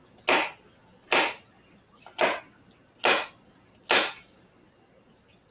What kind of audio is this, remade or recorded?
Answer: recorded